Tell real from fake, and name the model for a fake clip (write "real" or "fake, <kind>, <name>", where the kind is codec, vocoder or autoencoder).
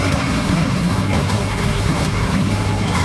fake, codec, SNAC